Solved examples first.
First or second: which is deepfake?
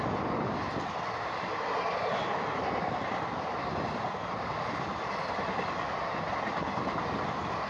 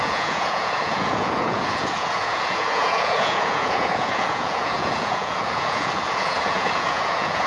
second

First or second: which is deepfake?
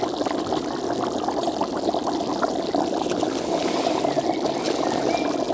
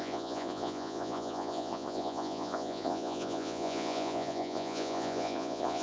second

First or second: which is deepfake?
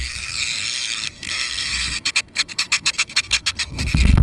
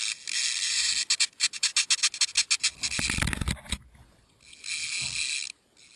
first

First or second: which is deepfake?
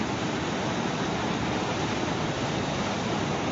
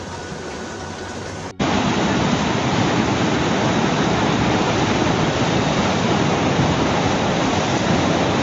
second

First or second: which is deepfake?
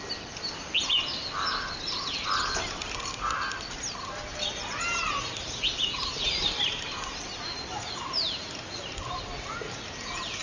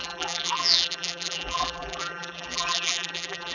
second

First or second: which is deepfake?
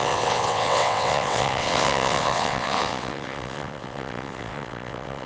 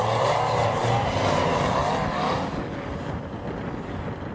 first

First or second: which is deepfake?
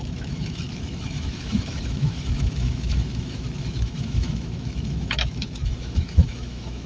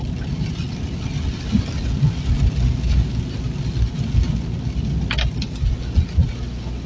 first